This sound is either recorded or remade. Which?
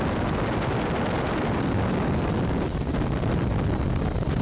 recorded